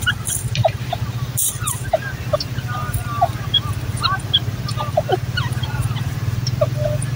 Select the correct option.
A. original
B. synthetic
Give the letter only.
A